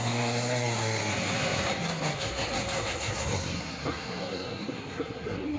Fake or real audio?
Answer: fake